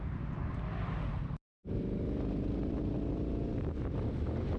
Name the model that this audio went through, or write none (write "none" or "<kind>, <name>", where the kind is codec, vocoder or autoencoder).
none